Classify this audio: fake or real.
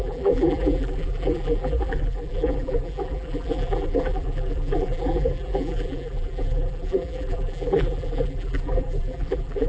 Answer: fake